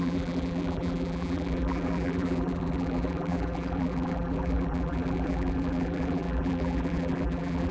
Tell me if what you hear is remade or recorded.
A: remade